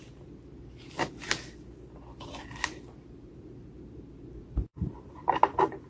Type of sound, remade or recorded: recorded